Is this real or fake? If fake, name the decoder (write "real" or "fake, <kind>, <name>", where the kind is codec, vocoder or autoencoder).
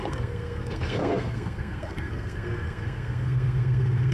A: fake, codec, SNAC